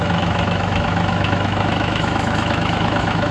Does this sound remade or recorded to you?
remade